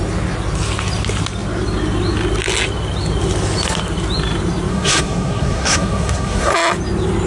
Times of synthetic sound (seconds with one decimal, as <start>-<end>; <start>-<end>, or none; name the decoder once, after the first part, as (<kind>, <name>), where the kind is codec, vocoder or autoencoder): 4.7-6.5 (codec, SNAC)